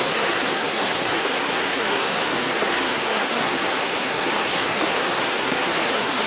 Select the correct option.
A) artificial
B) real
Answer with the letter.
A